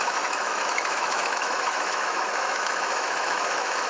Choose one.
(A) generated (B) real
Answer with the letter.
A